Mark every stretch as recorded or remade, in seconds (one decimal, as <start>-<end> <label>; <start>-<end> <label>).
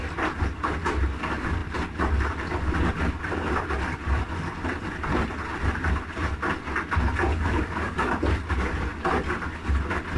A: 0.0-7.3 recorded; 7.3-8.1 remade; 8.1-10.2 recorded